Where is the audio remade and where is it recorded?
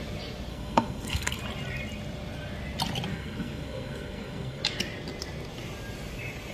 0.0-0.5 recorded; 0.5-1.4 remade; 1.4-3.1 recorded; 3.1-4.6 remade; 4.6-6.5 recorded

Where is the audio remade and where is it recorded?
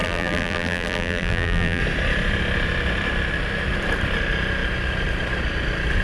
0.0-1.8 remade; 1.8-6.0 recorded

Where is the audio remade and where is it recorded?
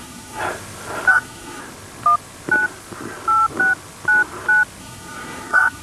0.0-0.4 remade; 0.4-1.1 recorded; 1.1-1.6 remade; 1.6-4.8 recorded; 4.8-5.8 remade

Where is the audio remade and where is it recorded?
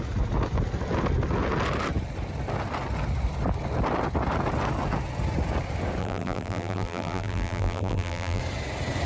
0.0-6.0 recorded; 6.0-8.4 remade; 8.4-9.1 recorded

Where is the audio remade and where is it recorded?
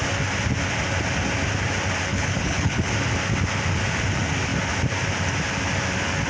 0.0-2.1 recorded; 2.1-2.9 remade; 2.9-6.3 recorded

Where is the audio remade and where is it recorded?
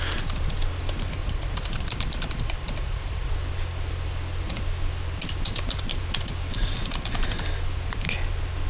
0.0-1.2 recorded; 1.2-3.3 remade; 3.3-8.7 recorded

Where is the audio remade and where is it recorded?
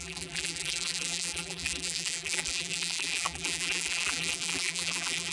0.0-5.3 remade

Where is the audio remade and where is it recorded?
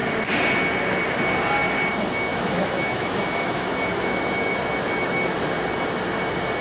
0.0-2.3 recorded; 2.3-5.3 remade; 5.3-6.6 recorded